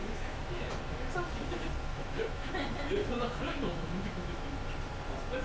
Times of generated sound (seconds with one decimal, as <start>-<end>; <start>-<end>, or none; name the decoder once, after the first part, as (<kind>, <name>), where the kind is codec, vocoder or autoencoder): 0.0-0.7 (autoencoder, DAC-VAE); 1.9-2.5; 3.0-4.5